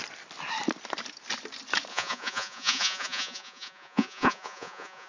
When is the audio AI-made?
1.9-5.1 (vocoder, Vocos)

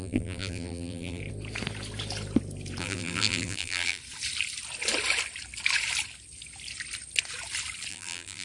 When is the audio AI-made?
0.0-1.2 (vocoder, BigVGAN v2); 2.8-4.0; 7.9-8.4

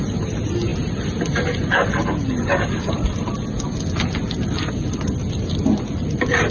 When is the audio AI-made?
none

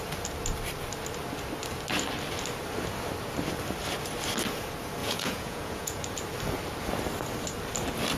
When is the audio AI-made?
5.0-6.0 (vocoder, Vocos)